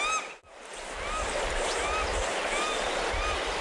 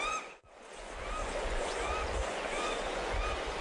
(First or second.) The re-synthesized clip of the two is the second